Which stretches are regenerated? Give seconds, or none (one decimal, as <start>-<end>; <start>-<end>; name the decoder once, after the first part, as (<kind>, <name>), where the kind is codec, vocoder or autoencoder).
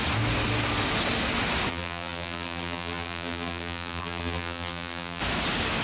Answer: 1.7-5.2 (vocoder, BigVGAN v2)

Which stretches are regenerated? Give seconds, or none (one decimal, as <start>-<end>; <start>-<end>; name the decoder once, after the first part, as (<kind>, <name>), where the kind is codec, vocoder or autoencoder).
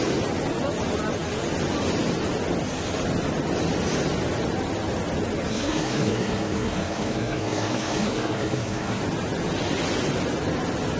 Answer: 5.5-9.0 (codec, SNAC)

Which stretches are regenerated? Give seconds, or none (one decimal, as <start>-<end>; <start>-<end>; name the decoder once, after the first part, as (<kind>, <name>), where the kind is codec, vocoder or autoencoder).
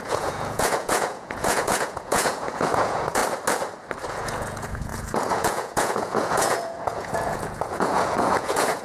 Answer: 0.0-3.2 (vocoder, Vocos); 4.1-8.8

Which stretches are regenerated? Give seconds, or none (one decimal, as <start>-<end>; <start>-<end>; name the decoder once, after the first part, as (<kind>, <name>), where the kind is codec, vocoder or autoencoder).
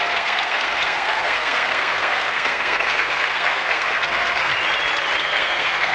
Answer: 0.0-4.5 (codec, SNAC); 5.2-5.9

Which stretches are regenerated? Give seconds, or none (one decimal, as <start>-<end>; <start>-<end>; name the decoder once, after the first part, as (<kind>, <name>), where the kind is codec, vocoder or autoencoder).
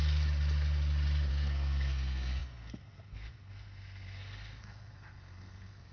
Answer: 1.3-5.9 (codec, SNAC)